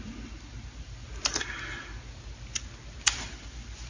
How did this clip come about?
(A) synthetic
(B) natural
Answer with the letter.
B